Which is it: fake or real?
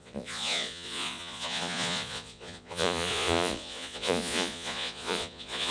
fake